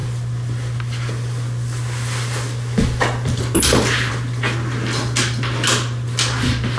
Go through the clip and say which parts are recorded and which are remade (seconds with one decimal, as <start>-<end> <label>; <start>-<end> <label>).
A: 0.0-6.8 recorded